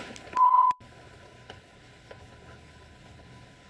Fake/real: fake